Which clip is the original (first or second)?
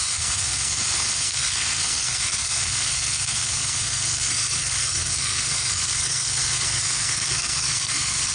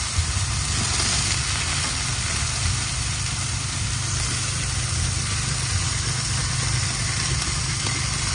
second